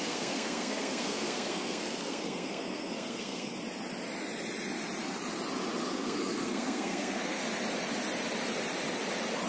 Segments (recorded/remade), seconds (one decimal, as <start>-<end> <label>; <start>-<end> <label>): 0.0-3.5 remade; 3.5-5.9 recorded; 5.9-7.4 remade; 7.4-9.5 recorded